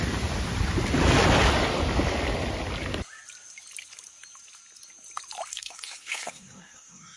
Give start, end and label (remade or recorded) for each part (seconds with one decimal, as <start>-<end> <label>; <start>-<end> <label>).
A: 0.0-5.5 recorded; 5.5-7.2 remade